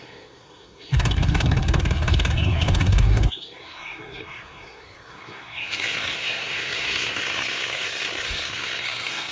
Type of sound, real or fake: fake